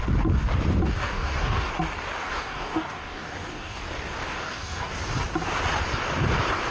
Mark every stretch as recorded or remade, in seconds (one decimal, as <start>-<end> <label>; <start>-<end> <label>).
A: 0.0-1.0 recorded; 1.0-1.7 remade; 1.7-2.2 recorded; 2.2-3.8 remade; 3.8-4.3 recorded; 4.3-4.9 remade; 4.9-6.7 recorded